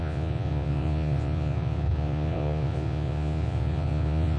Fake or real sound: fake